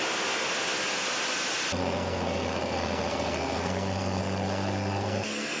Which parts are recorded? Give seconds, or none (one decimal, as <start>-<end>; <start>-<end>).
0.0-1.8